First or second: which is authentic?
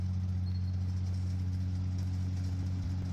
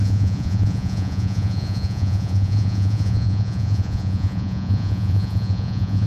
first